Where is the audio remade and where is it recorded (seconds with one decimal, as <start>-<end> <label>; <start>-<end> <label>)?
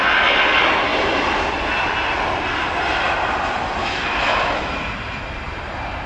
0.0-3.8 recorded; 3.8-4.7 remade; 4.7-6.1 recorded